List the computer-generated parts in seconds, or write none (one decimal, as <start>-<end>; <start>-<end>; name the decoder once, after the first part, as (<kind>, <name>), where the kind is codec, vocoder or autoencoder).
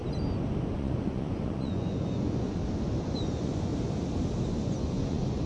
0.7-2.6 (vocoder, Vocos); 3.1-3.7; 4.5-5.5